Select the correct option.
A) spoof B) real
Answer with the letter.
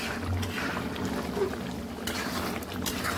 B